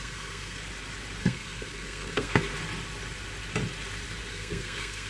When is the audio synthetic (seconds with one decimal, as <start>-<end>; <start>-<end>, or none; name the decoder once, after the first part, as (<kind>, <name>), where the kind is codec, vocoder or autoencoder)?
0.0-0.6 (codec, SNAC); 1.2-2.5; 4.3-5.1